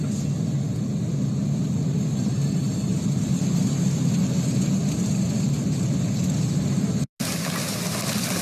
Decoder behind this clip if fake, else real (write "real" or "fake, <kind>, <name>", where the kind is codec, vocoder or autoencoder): real